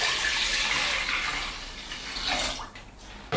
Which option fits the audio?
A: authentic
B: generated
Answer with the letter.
A